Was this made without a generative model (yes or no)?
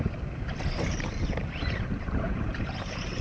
no